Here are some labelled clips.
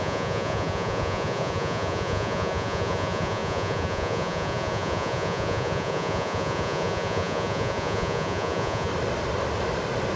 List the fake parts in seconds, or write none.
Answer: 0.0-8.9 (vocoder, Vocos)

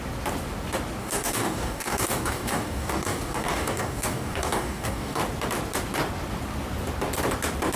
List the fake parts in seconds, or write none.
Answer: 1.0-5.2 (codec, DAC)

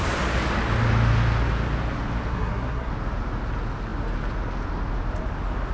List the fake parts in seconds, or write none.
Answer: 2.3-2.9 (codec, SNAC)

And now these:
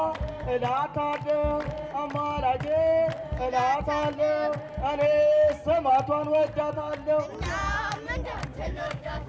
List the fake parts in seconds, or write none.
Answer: 8.5-9.3 (codec, DAC)

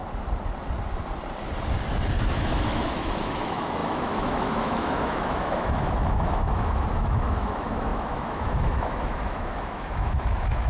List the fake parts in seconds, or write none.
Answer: 2.3-10.7 (autoencoder, DAC-VAE)